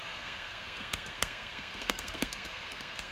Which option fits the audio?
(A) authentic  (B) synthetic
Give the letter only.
B